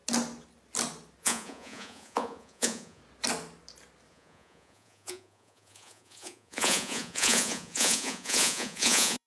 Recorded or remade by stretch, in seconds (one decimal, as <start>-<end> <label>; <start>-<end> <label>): 0.0-1.2 recorded; 1.2-3.0 remade; 3.0-4.1 recorded; 4.1-9.3 remade